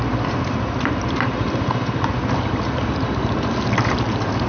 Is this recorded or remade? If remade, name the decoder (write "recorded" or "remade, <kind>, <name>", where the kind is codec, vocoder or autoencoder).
recorded